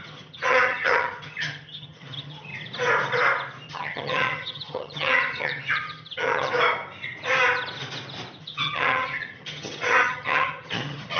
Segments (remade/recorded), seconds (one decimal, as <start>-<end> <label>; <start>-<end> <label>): 0.0-2.5 remade; 2.5-3.7 recorded; 3.7-6.5 remade; 6.5-8.4 recorded; 8.4-11.2 remade